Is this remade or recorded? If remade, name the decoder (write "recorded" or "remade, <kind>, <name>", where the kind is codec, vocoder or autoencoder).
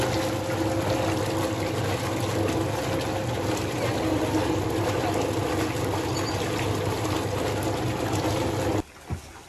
recorded